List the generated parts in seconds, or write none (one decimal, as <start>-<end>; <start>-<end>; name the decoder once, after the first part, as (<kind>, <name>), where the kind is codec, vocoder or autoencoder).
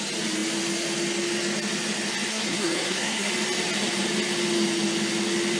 2.3-3.3 (codec, SNAC)